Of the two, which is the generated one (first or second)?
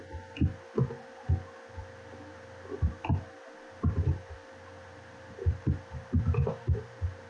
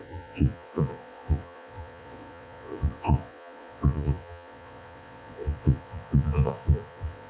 second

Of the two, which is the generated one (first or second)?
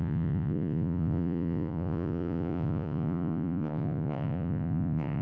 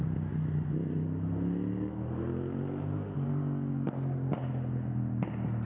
first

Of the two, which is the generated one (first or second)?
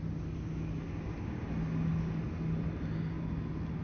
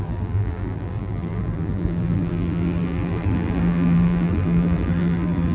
second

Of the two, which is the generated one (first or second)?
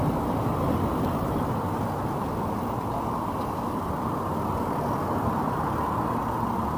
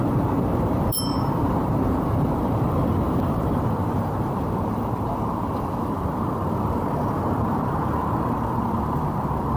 second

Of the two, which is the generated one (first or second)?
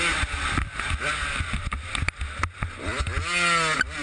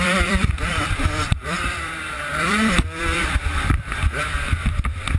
second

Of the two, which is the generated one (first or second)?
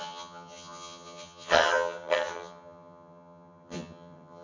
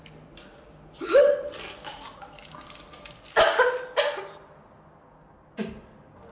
first